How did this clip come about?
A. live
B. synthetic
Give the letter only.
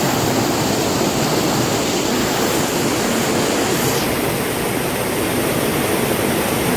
A